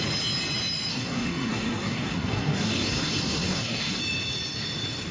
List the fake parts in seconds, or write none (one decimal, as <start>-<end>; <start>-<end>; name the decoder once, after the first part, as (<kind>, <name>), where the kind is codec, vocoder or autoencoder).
0.9-4.0 (codec, SNAC)